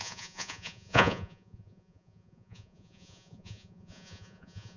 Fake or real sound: fake